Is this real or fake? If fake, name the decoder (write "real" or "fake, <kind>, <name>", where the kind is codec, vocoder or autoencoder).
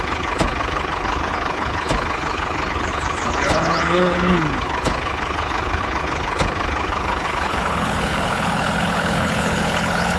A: fake, codec, HILCodec